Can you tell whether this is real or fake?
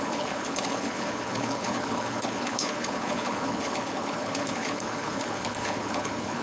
fake